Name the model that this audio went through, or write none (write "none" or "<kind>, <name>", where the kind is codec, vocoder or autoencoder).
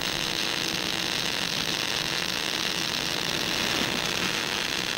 none